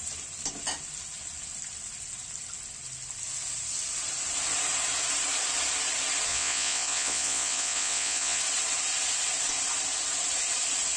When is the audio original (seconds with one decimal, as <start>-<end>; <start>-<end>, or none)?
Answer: 0.0-6.3; 8.4-11.0